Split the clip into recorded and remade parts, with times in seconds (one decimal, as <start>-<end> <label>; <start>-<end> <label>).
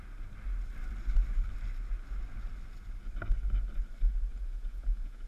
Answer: 0.0-4.3 recorded; 4.3-5.3 remade